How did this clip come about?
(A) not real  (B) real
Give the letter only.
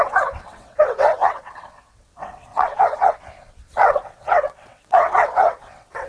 A